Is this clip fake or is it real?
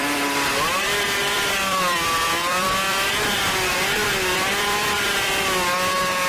fake